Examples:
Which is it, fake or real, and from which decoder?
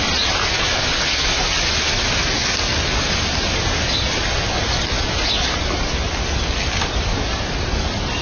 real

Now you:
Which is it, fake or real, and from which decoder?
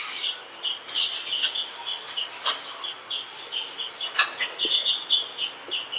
real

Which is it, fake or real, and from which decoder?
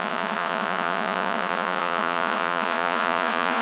fake, vocoder, Vocos